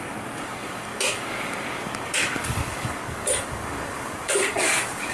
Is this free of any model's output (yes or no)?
no